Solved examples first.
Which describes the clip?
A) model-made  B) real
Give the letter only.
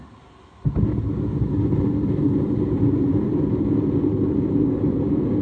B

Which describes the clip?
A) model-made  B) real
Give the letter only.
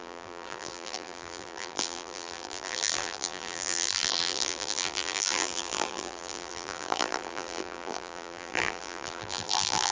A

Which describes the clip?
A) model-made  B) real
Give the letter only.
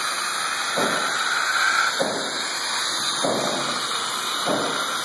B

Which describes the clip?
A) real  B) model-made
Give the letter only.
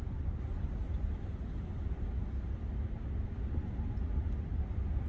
A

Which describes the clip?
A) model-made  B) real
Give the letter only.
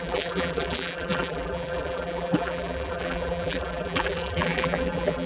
A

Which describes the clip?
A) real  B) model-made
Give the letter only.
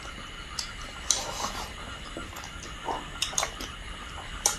B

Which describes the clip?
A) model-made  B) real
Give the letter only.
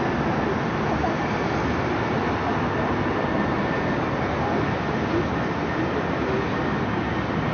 B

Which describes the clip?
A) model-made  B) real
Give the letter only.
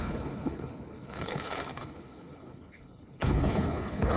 A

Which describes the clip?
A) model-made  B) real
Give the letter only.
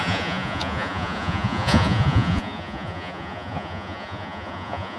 A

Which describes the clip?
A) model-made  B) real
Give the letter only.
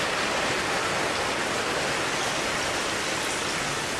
B